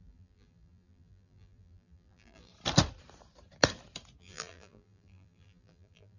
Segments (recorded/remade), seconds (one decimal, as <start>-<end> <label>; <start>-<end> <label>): 0.0-2.5 remade; 2.5-4.2 recorded; 4.2-6.2 remade